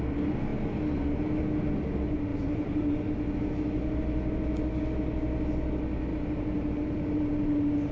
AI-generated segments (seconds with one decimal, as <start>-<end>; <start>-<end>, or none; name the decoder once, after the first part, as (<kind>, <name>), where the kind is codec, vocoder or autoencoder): 2.3-2.9 (vocoder, BigVGAN v2); 6.1-7.9

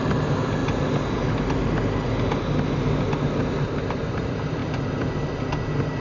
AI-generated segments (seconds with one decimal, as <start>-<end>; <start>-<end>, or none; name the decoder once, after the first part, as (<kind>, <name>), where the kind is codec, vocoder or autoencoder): 4.6-5.2 (vocoder, BigVGAN v2)